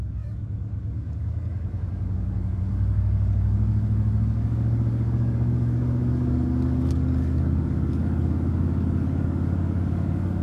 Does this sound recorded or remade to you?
remade